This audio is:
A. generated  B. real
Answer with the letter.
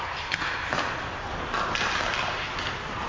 B